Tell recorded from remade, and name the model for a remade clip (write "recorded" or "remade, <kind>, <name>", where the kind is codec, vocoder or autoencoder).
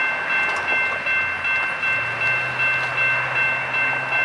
recorded